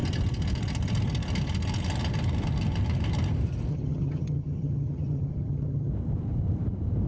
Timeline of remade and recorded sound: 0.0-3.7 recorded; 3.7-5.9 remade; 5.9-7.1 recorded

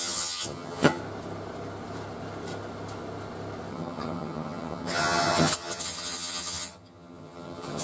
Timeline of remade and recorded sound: 0.0-1.0 remade; 1.0-3.7 recorded; 3.7-7.8 remade